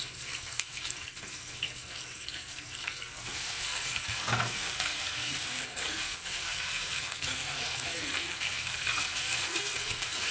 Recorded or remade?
remade